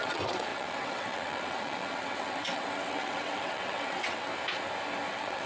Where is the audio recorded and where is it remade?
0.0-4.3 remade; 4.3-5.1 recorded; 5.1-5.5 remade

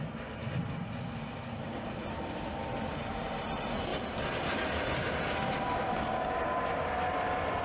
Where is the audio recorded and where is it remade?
0.0-7.6 recorded

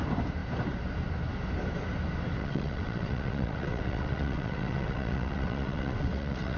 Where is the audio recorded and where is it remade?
0.0-2.4 recorded; 2.4-6.6 remade

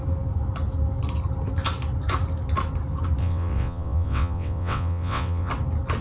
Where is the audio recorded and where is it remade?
0.0-3.2 recorded; 3.2-5.5 remade; 5.5-6.0 recorded

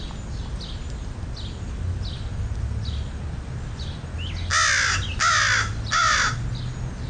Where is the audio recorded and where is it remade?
0.0-7.1 recorded

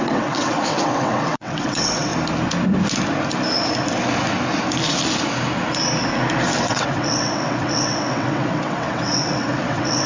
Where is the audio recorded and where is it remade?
0.0-2.1 remade; 2.1-6.6 recorded; 6.6-10.1 remade

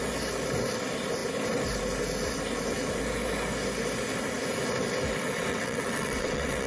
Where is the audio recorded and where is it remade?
0.0-5.5 recorded; 5.5-6.7 remade